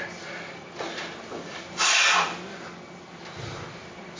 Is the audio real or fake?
real